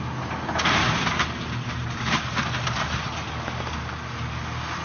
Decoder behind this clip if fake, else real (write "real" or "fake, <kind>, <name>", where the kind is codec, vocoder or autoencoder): real